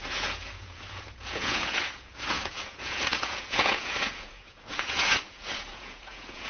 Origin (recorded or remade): remade